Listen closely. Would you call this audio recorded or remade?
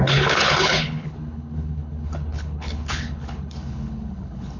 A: remade